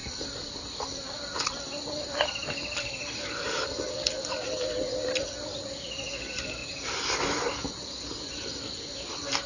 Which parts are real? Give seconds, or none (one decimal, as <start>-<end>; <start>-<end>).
0.0-9.5